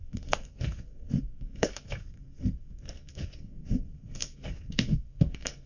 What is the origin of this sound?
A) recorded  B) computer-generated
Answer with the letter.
B